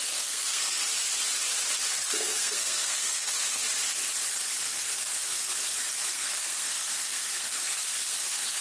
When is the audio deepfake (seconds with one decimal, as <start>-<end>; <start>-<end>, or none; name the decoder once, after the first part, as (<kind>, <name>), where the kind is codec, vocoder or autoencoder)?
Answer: 0.0-0.8 (codec, SNAC); 1.9-3.6; 4.6-5.5; 6.1-8.6